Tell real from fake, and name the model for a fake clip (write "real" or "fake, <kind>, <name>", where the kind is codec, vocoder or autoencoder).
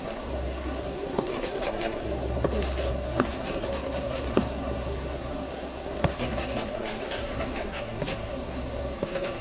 fake, codec, SNAC